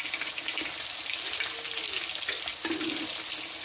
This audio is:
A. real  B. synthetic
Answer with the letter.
A